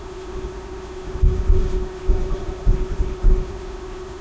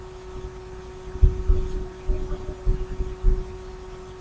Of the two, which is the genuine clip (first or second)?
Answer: second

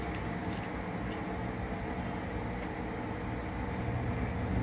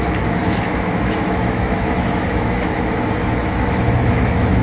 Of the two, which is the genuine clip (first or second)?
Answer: first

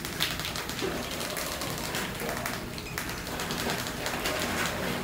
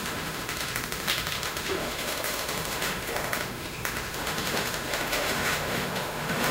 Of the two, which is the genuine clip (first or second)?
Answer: first